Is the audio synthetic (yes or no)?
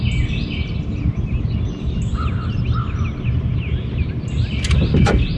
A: no